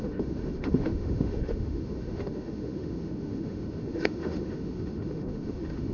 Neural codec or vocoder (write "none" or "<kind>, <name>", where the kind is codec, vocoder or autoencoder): autoencoder, DAC-VAE